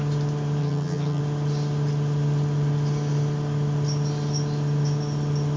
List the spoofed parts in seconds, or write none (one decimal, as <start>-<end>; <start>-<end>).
0.6-1.2